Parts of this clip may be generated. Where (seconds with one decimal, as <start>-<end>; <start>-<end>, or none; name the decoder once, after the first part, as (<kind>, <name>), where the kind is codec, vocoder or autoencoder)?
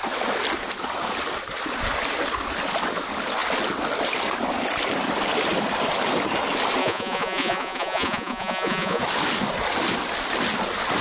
6.8-9.0 (vocoder, Vocos)